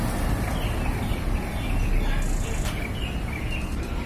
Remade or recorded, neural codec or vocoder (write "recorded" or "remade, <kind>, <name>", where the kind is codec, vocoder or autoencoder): recorded